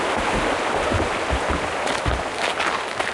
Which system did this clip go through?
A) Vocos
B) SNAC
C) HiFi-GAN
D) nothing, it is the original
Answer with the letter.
D